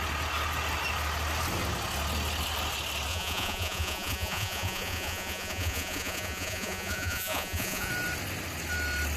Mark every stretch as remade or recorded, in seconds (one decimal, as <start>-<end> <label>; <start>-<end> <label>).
0.0-3.1 recorded; 3.1-7.9 remade; 7.9-9.2 recorded

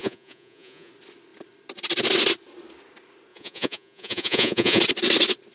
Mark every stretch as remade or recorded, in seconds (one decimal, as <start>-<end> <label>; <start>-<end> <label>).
0.0-0.9 remade; 0.9-3.3 recorded; 3.3-4.8 remade; 4.8-5.5 recorded

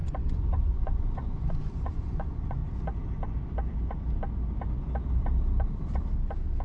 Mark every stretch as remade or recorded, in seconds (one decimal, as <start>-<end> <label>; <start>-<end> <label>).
0.0-2.6 remade; 2.6-6.6 recorded

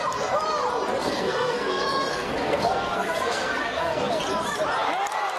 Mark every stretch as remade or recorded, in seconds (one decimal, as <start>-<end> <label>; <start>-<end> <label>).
0.0-1.0 recorded; 1.0-4.2 remade; 4.2-5.4 recorded